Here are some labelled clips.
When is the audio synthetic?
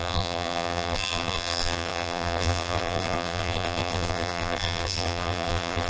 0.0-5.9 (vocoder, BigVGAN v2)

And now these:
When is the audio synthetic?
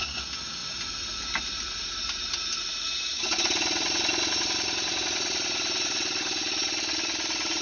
none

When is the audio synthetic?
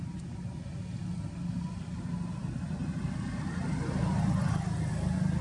none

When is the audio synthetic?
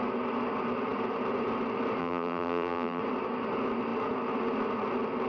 2.0-3.0 (vocoder, BigVGAN v2)